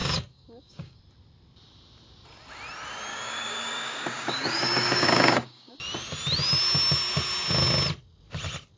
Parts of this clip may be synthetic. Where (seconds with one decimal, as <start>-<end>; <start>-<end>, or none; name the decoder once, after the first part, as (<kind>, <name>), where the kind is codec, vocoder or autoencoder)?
0.0-1.0 (codec, DAC); 3.1-5.7

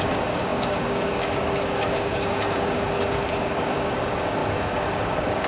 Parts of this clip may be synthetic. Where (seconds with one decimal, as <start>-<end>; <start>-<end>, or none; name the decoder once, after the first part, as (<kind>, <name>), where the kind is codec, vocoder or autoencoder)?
0.0-5.5 (codec, DAC)

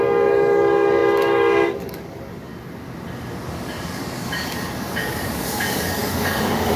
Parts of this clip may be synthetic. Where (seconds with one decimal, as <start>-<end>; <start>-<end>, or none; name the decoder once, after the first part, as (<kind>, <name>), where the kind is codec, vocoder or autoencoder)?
0.0-2.5 (codec, DAC); 3.5-6.8

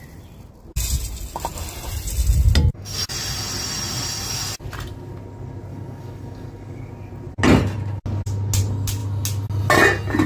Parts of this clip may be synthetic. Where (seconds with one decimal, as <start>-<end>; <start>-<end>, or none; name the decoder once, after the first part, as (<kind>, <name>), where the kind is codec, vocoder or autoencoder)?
5.7-6.9 (codec, DAC)

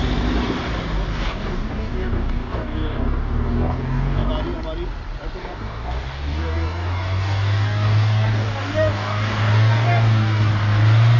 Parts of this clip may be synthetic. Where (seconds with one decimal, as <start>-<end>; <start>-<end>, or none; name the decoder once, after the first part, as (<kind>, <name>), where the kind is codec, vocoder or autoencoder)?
1.1-4.3 (codec, DAC); 5.4-10.5